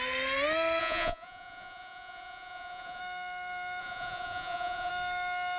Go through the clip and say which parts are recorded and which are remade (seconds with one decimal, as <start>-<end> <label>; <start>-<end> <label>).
0.0-0.8 recorded; 0.8-3.0 remade; 3.0-3.8 recorded; 3.8-4.9 remade; 4.9-5.6 recorded